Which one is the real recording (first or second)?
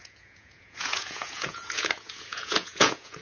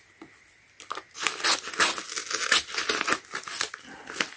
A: second